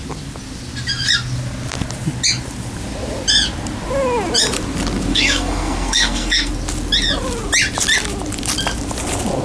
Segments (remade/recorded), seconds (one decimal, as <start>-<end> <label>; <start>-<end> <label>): 0.0-5.1 recorded; 5.1-6.5 remade; 6.5-9.4 recorded